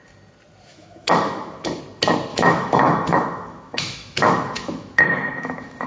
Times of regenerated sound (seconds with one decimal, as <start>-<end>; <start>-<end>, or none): 0.7-1.8; 2.3-5.9